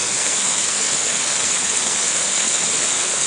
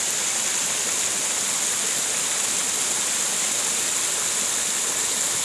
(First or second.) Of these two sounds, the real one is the second